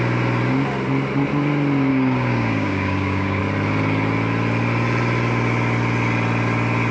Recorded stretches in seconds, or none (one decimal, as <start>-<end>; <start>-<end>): 0.0-1.9; 3.4-6.9